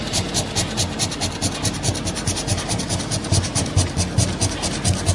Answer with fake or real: real